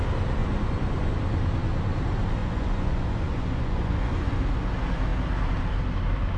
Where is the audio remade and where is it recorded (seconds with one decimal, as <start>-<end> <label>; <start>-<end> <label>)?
0.0-0.4 recorded; 0.4-1.1 remade; 1.1-2.4 recorded; 2.4-4.4 remade; 4.4-6.4 recorded